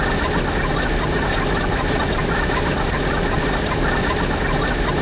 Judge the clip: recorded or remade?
recorded